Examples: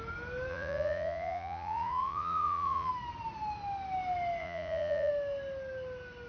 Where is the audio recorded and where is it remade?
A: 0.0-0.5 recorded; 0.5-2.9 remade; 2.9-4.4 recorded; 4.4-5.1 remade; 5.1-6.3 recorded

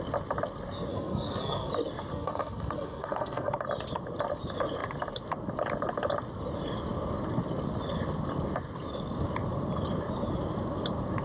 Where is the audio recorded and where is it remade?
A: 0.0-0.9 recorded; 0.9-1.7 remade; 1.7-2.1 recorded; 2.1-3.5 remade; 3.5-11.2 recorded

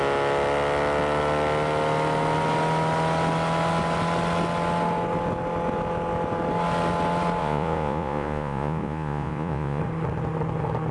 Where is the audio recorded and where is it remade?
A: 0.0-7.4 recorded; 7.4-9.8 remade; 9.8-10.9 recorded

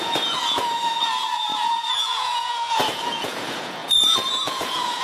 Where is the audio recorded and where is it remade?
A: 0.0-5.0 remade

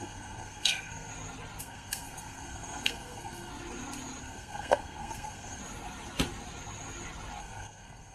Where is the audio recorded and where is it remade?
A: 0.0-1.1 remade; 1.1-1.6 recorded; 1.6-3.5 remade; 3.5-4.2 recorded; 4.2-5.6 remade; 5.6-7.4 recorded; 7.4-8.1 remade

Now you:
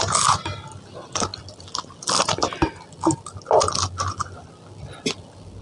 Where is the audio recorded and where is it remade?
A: 0.0-5.6 recorded

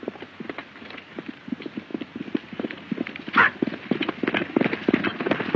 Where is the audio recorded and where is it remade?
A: 0.0-0.6 recorded; 0.6-1.4 remade; 1.4-5.6 recorded